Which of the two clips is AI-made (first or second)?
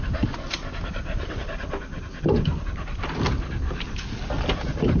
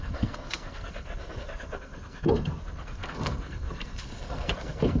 second